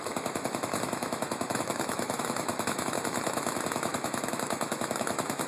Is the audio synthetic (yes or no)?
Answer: yes